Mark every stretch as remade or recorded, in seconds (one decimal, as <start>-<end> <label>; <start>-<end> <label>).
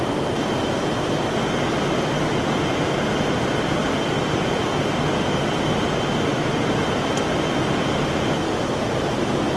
0.0-3.8 recorded; 3.8-4.7 remade; 4.7-6.3 recorded; 6.3-7.0 remade; 7.0-9.6 recorded